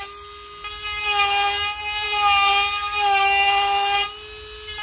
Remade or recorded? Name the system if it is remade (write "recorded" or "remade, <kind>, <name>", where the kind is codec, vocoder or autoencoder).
recorded